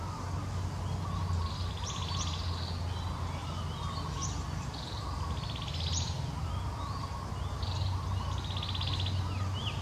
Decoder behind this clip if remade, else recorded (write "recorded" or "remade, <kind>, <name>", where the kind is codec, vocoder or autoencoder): recorded